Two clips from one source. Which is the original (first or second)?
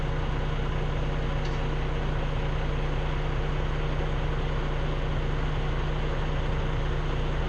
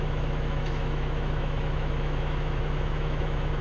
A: first